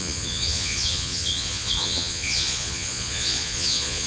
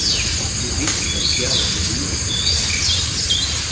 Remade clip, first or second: first